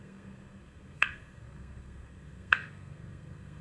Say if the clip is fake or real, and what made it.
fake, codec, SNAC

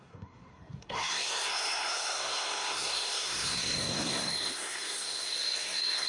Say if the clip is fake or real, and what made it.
fake, codec, SNAC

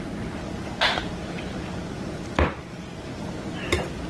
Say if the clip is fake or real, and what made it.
real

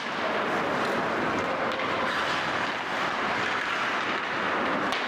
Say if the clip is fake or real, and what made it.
real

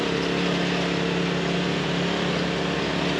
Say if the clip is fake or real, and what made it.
real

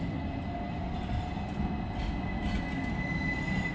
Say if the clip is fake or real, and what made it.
real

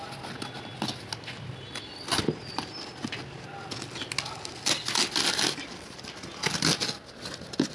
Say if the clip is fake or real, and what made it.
real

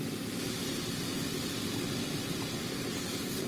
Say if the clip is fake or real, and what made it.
real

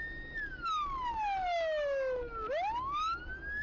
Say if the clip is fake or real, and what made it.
real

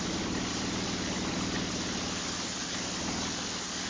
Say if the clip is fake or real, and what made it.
real